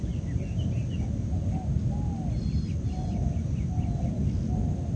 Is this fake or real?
real